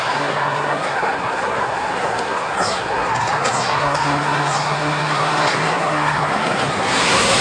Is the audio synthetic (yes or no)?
yes